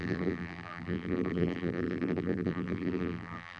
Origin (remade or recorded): remade